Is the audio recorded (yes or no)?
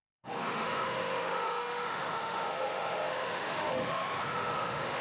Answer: no